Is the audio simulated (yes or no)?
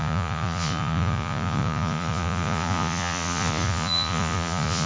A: yes